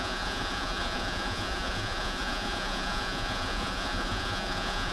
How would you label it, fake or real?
fake